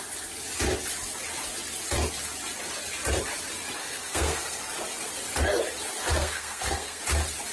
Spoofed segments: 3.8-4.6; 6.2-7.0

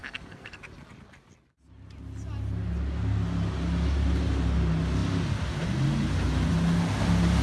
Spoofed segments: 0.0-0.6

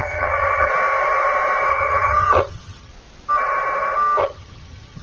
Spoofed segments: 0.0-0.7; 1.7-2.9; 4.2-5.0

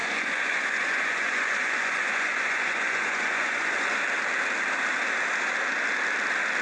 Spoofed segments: 0.0-4.0